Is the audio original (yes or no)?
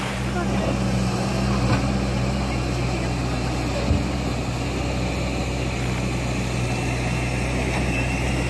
yes